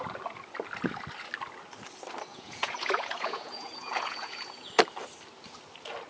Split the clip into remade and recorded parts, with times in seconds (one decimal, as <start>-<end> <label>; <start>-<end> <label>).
0.0-2.3 recorded; 2.3-4.7 remade; 4.7-6.1 recorded